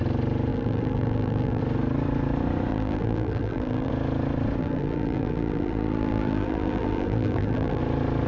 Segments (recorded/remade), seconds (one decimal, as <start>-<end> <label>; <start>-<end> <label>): 0.0-0.5 recorded; 0.5-1.6 remade; 1.6-2.7 recorded; 2.7-3.9 remade; 3.9-4.6 recorded; 4.6-7.8 remade; 7.8-8.3 recorded

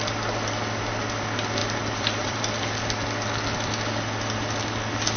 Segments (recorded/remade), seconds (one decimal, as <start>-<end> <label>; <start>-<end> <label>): 0.0-1.6 recorded; 1.6-2.4 remade; 2.4-5.2 recorded

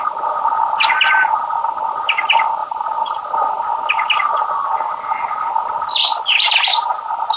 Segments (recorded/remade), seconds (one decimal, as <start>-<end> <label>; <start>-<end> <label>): 0.0-2.6 recorded; 2.6-3.8 remade; 3.8-7.4 recorded

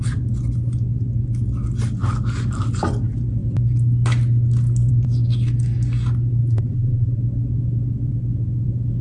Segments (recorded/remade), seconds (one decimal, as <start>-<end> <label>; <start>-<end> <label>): 0.0-6.4 recorded; 6.4-7.2 remade; 7.2-9.0 recorded

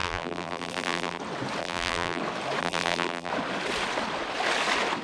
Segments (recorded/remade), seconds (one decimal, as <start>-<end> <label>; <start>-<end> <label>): 0.0-1.2 remade; 1.2-1.6 recorded; 1.6-2.2 remade; 2.2-2.6 recorded; 2.6-3.3 remade; 3.3-5.0 recorded

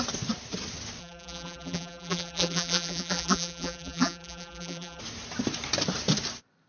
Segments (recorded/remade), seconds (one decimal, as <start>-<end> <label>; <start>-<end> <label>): 0.0-1.0 recorded; 1.0-5.0 remade; 5.0-6.7 recorded